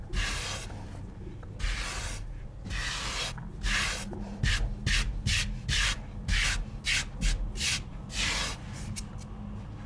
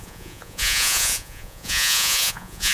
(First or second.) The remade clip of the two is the second